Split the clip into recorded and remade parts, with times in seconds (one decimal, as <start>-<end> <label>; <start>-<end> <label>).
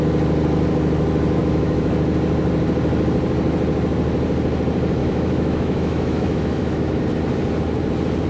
0.0-1.4 recorded; 1.4-1.9 remade; 1.9-5.0 recorded; 5.0-7.0 remade; 7.0-8.3 recorded